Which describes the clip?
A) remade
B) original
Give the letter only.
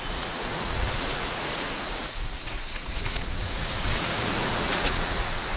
A